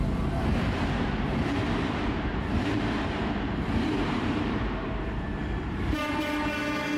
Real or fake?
fake